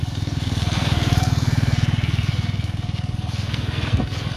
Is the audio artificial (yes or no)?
yes